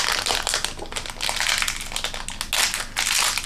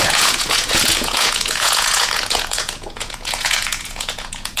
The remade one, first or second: second